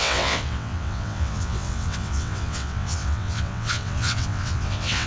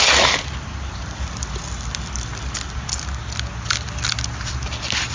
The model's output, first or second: first